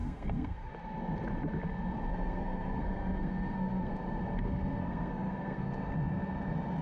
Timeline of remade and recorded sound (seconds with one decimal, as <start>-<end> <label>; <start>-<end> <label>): 0.0-0.7 remade; 0.7-2.1 recorded; 2.1-3.9 remade; 3.9-4.8 recorded; 4.8-5.7 remade; 5.7-6.8 recorded